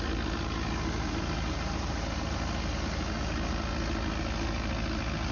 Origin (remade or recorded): recorded